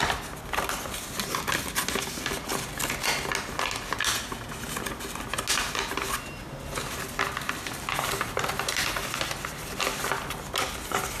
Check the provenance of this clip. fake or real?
real